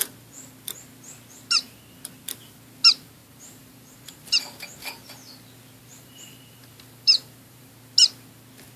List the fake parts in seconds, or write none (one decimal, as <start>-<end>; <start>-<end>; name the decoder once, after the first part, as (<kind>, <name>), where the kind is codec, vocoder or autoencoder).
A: 3.2-4.4 (vocoder, BigVGAN v2); 5.9-7.7